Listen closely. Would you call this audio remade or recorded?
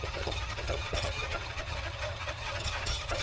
remade